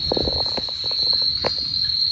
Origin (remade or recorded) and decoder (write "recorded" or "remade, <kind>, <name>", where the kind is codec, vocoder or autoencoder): recorded